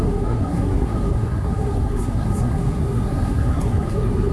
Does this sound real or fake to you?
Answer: fake